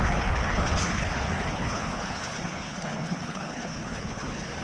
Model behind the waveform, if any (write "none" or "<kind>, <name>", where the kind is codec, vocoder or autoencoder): codec, HILCodec